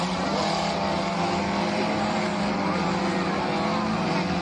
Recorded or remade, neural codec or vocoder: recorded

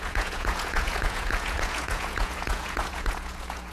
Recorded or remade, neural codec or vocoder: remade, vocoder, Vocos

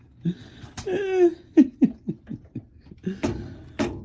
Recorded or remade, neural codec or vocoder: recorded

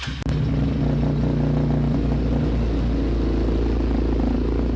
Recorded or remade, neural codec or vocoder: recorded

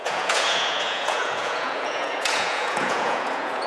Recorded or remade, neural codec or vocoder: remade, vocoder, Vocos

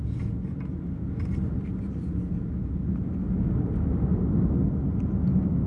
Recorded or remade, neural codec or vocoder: recorded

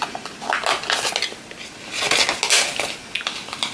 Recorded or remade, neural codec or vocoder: recorded